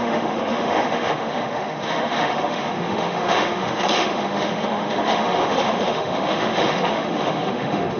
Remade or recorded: remade